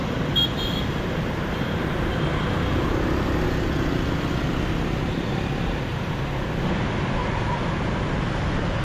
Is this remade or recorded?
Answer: recorded